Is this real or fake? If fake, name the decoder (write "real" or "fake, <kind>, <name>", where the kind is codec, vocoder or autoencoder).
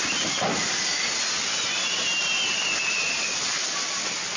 real